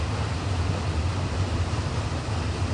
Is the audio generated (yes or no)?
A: no